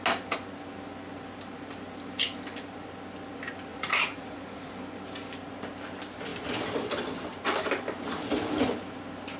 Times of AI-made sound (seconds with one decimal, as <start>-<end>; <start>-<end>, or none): 3.7-4.7